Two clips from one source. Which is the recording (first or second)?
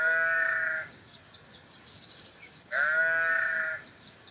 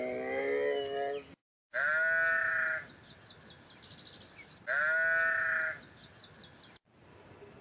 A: second